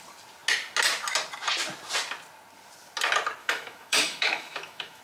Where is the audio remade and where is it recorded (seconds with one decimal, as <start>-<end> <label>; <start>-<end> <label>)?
0.0-3.4 recorded; 3.4-5.0 remade